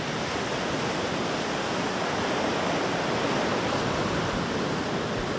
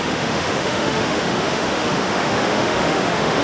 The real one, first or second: first